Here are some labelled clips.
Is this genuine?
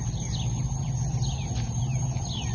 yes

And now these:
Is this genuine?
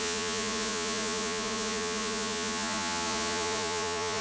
no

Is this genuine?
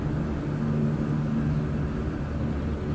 yes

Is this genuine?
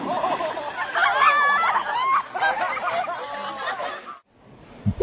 yes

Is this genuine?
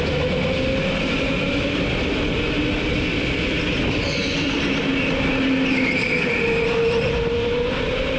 yes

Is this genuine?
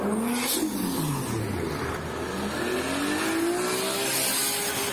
yes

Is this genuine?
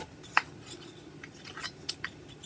yes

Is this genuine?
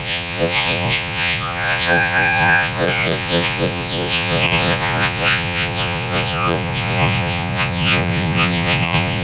no